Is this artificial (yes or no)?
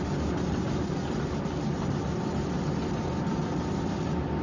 no